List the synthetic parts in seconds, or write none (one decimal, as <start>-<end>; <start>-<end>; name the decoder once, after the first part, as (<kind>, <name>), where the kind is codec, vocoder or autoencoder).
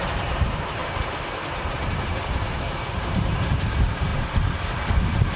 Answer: 0.0-4.1 (vocoder, BigVGAN v2); 4.6-5.4